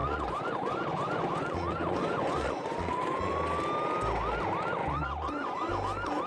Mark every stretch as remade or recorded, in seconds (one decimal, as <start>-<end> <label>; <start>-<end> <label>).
0.0-3.3 remade; 3.3-4.8 recorded; 4.8-5.7 remade; 5.7-6.3 recorded